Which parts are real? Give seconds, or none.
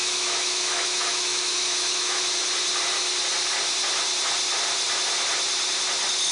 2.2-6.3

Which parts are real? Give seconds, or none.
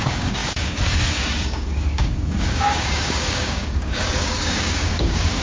none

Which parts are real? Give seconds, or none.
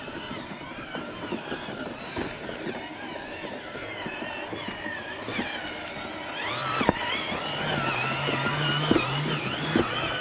0.0-6.6; 7.6-10.2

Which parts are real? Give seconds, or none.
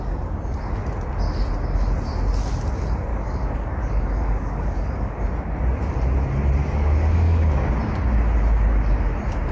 0.0-3.1; 5.2-6.6; 7.7-9.5